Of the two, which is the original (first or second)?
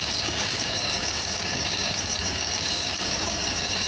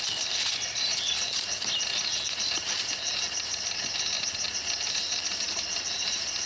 second